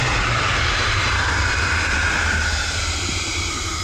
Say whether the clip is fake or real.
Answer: fake